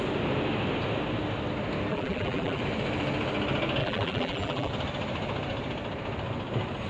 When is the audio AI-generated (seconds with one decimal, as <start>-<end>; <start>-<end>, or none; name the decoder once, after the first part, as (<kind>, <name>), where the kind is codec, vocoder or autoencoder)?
1.9-2.6 (vocoder, BigVGAN v2); 3.8-4.7